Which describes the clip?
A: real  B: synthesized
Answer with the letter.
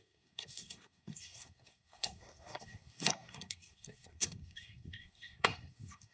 B